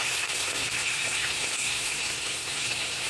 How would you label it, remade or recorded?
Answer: remade